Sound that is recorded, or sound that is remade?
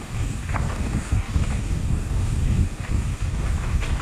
remade